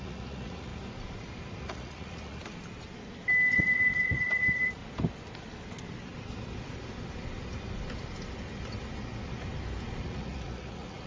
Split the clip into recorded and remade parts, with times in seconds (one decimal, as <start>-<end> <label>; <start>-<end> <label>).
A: 0.0-0.7 remade; 0.7-1.6 recorded; 1.6-2.4 remade; 2.4-3.5 recorded; 3.5-4.8 remade; 4.8-10.0 recorded; 10.0-11.1 remade